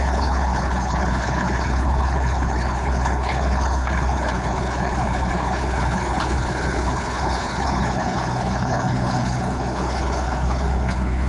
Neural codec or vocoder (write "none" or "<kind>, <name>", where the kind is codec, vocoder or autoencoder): codec, HILCodec